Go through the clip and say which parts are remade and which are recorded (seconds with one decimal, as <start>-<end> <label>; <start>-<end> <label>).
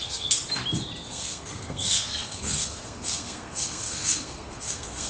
0.0-0.4 remade; 0.4-1.1 recorded; 1.1-5.1 remade